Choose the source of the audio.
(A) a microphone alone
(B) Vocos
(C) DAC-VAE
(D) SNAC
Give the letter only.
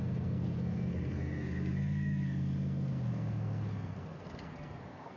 D